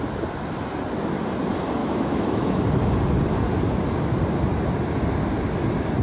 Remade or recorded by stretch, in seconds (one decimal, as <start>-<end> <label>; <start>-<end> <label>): 0.0-1.8 recorded; 1.8-2.6 remade; 2.6-6.0 recorded